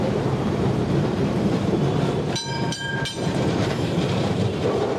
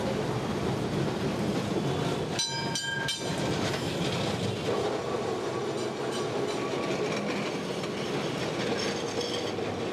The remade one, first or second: first